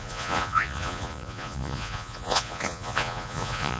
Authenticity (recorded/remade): remade